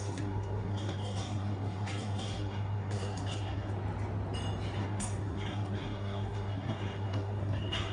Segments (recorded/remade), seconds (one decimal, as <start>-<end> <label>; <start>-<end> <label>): 0.0-3.7 remade; 3.7-4.8 recorded; 4.8-7.9 remade